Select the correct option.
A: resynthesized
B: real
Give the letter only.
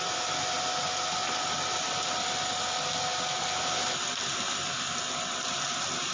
B